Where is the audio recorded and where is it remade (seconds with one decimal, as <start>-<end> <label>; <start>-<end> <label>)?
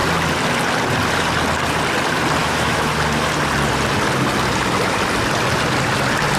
0.0-2.4 recorded; 2.4-2.9 remade; 2.9-6.4 recorded